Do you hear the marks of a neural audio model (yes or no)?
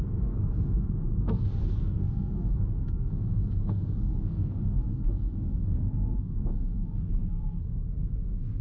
yes